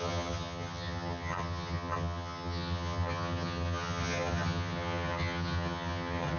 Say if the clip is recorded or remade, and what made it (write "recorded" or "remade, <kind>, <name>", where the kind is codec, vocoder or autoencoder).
remade, vocoder, HiFi-GAN